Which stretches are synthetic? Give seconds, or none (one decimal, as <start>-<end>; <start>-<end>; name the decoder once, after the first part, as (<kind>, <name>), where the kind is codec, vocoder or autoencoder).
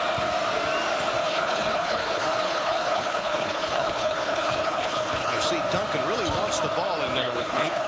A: 1.2-5.4 (codec, HILCodec); 7.2-7.9